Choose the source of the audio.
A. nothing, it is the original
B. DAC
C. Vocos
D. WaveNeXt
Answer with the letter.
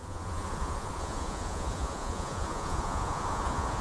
C